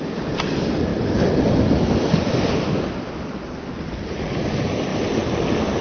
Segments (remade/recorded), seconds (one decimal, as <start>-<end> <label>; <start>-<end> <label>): 0.0-5.8 recorded